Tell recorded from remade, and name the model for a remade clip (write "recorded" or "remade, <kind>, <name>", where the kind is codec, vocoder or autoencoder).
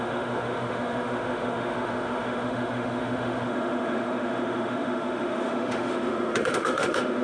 remade, autoencoder, DAC-VAE